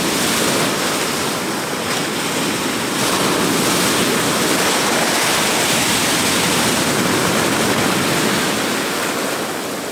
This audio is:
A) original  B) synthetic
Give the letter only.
A